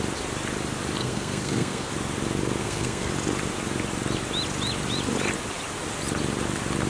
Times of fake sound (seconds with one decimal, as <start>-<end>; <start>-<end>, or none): 1.0-1.9; 2.6-3.1